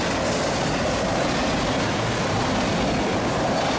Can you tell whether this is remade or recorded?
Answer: recorded